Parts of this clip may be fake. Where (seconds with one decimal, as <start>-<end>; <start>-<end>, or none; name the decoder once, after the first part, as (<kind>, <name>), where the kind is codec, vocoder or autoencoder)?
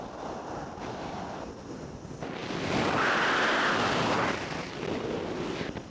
2.4-4.3 (vocoder, BigVGAN v2)